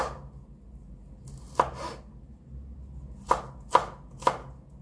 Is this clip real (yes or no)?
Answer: yes